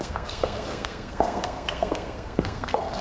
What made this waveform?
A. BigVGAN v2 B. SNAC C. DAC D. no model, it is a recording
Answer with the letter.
B